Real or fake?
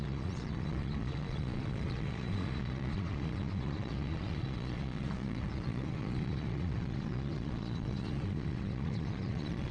fake